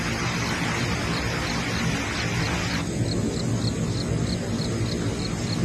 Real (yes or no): yes